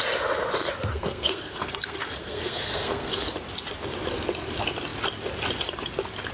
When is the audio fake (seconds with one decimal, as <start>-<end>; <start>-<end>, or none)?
0.9-3.1